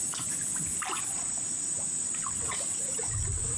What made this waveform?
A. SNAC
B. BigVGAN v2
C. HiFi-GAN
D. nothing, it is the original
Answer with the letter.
D